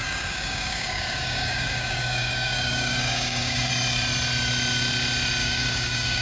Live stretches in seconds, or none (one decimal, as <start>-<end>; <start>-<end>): 3.7-5.4